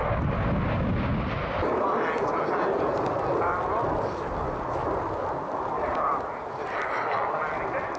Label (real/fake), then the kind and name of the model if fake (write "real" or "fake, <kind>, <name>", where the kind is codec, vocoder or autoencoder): real